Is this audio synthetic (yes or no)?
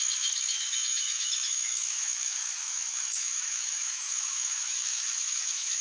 yes